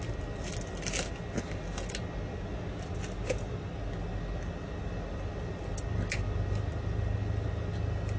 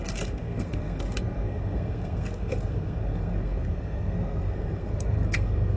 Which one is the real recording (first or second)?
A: first